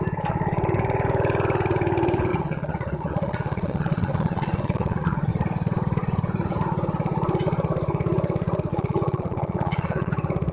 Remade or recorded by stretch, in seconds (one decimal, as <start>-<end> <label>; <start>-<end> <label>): 0.0-2.3 recorded; 2.3-5.3 remade; 5.3-8.7 recorded; 8.7-10.1 remade; 10.1-10.5 recorded